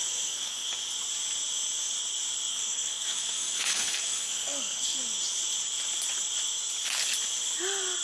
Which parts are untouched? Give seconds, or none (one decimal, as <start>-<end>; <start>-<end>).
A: 0.7-2.5; 5.0-8.0